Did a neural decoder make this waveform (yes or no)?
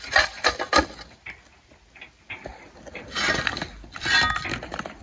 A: no